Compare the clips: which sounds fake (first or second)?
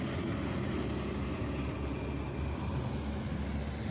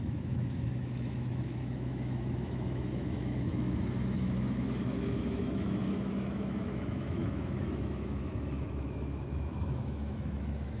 second